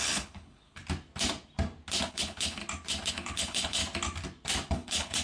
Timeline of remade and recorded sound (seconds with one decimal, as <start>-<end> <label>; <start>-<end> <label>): 0.0-0.8 remade; 0.8-2.1 recorded; 2.1-2.6 remade; 2.6-3.1 recorded; 3.1-3.8 remade; 3.8-4.7 recorded; 4.7-5.2 remade